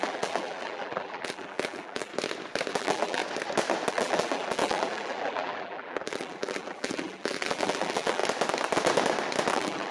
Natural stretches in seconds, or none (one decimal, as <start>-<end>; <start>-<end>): 2.1-2.7; 3.2-3.9; 8.2-9.5